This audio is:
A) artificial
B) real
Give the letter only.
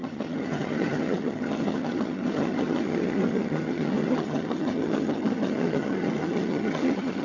A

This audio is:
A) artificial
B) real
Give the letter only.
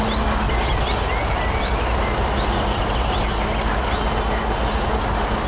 B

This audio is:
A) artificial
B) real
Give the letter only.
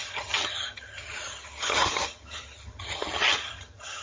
A